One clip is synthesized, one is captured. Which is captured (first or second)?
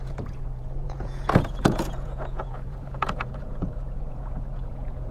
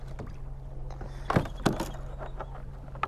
second